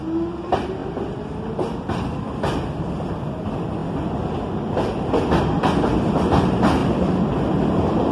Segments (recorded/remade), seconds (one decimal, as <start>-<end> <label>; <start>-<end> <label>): 0.0-8.1 recorded